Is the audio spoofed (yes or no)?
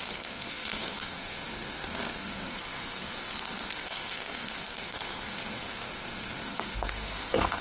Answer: yes